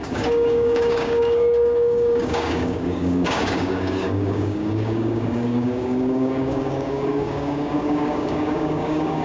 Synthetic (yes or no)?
yes